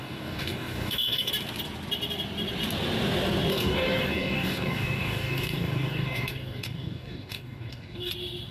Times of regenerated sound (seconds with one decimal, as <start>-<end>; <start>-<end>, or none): 0.0-1.3; 3.5-8.1